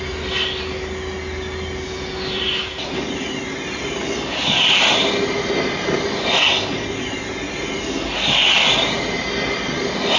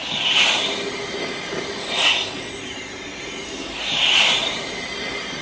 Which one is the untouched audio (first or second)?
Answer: first